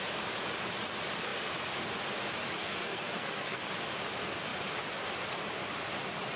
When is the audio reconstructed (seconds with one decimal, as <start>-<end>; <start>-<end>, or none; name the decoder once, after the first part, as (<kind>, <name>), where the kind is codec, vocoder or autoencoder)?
2.6-3.6 (codec, SNAC)